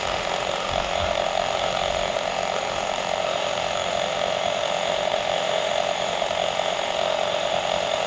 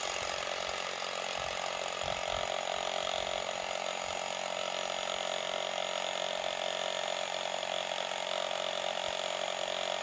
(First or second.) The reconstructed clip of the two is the first